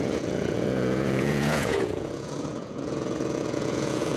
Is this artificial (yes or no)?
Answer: yes